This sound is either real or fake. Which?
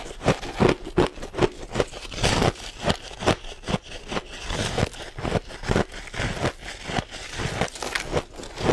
real